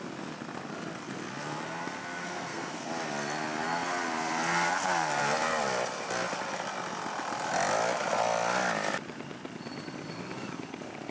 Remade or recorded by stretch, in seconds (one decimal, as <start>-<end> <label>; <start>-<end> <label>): 0.0-2.2 recorded; 2.2-2.9 remade; 2.9-11.1 recorded